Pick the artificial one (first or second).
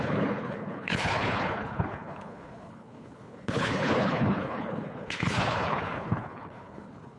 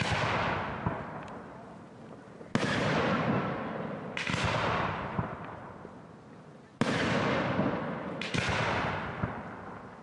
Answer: first